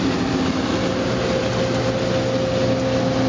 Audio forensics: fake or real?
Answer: real